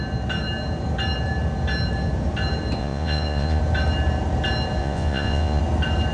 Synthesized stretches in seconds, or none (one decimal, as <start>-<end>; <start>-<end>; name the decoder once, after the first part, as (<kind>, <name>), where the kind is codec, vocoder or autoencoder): 2.8-3.6 (vocoder, Vocos); 4.8-5.6